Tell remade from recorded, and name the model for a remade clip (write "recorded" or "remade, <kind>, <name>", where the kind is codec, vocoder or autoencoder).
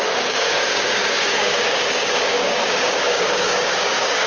remade, codec, DAC